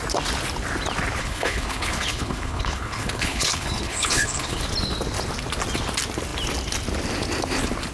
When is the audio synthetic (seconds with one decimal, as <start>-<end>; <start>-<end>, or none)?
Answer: 1.2-4.6